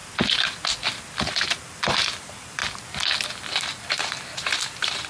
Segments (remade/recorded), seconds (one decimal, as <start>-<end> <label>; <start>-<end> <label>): 0.0-1.6 recorded; 1.6-2.6 remade; 2.6-3.6 recorded; 3.6-5.1 remade

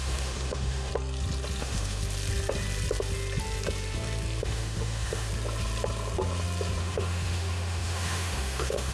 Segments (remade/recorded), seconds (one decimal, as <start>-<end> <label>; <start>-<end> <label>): 0.0-0.9 remade; 0.9-1.6 recorded; 1.6-2.0 remade; 2.0-4.4 recorded; 4.4-5.3 remade; 5.3-6.8 recorded; 6.8-8.9 remade

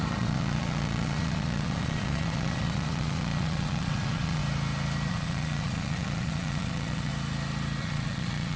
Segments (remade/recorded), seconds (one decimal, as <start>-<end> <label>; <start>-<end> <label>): 0.0-4.4 remade; 4.4-5.1 recorded; 5.1-7.1 remade; 7.1-7.8 recorded; 7.8-8.6 remade

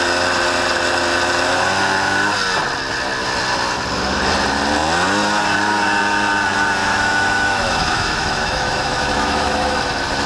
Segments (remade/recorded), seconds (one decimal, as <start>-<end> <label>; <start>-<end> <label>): 0.0-6.8 recorded; 6.8-9.8 remade; 9.8-10.3 recorded

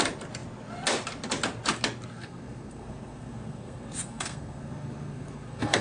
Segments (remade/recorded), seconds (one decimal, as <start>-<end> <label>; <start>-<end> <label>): 0.0-2.1 recorded; 2.1-5.8 remade

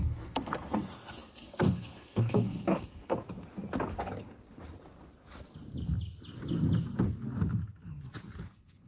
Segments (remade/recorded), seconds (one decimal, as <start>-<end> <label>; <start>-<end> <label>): 0.0-3.1 remade; 3.1-8.4 recorded; 8.4-8.9 remade

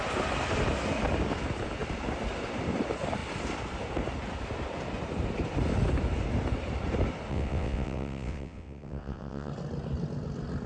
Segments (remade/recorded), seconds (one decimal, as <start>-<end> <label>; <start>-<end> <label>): 0.0-7.3 recorded; 7.3-9.5 remade; 9.5-10.7 recorded